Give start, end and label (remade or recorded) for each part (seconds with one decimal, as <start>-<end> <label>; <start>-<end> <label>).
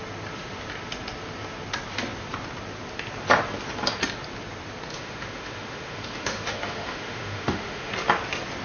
0.0-4.9 recorded; 4.9-7.9 remade; 7.9-8.6 recorded